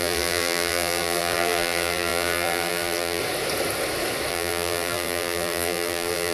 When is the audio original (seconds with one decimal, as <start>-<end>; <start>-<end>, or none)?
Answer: 3.2-4.3